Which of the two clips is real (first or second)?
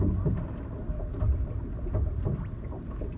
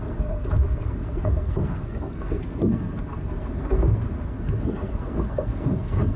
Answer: first